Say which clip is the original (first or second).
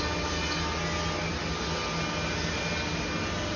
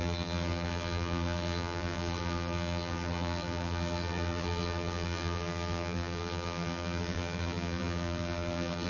first